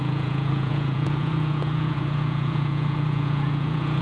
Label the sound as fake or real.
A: fake